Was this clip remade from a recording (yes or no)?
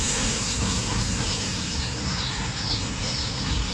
yes